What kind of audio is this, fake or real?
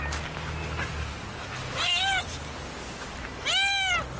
real